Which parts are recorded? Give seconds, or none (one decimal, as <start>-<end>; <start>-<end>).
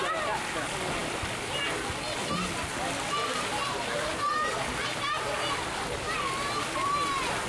0.0-7.5